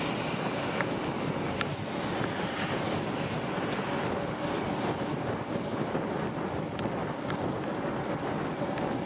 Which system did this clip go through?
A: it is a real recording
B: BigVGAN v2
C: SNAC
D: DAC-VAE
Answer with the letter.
A